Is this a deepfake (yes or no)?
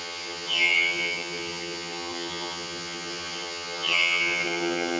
yes